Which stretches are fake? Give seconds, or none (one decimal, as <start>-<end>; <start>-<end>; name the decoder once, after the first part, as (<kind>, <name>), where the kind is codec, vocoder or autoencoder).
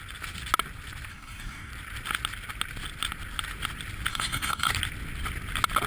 1.1-1.7 (codec, DAC); 4.1-4.7